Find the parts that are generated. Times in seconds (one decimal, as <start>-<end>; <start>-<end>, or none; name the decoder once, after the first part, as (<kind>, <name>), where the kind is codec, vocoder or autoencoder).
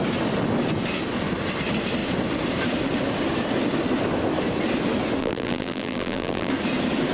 5.2-6.5 (vocoder, BigVGAN v2)